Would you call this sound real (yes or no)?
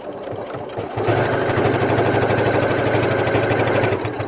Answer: yes